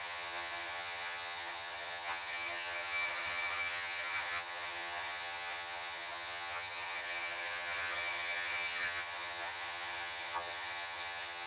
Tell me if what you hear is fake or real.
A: fake